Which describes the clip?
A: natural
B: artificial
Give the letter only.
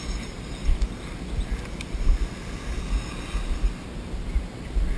A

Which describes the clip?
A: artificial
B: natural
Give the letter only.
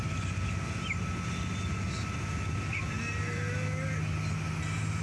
B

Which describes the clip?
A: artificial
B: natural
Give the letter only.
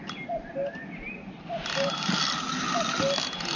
B